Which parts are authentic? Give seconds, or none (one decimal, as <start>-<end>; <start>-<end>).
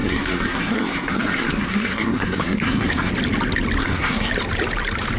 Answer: 3.1-3.8; 4.3-5.2